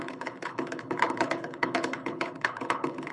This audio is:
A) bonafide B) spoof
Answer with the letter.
B